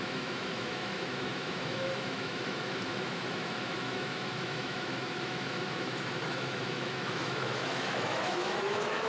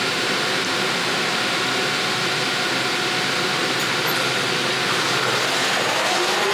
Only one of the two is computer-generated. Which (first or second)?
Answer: first